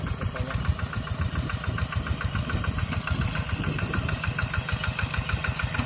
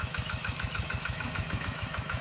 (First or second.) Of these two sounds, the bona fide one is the first